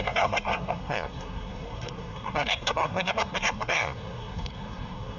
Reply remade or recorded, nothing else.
remade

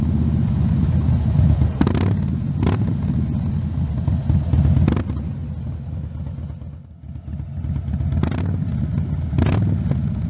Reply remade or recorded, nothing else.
recorded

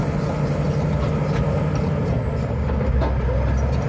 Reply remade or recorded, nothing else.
recorded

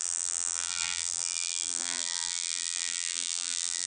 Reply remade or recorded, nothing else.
remade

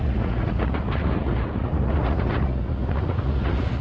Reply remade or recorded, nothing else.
remade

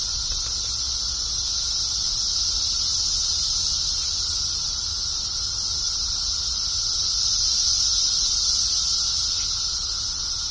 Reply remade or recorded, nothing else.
recorded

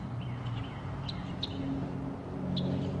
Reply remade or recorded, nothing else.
recorded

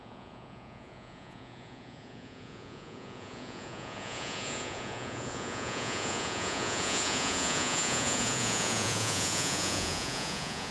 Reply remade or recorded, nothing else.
remade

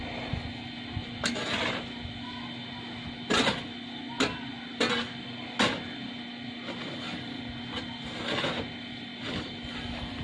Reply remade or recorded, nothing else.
recorded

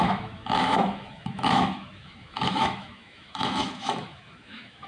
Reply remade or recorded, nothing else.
remade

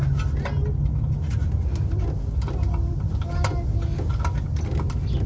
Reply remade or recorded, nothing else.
recorded